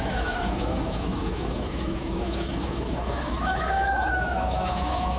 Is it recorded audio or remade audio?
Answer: remade